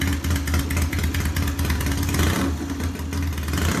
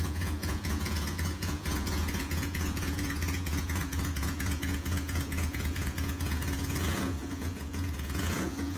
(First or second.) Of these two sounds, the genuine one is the first